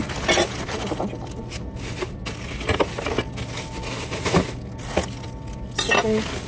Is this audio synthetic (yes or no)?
no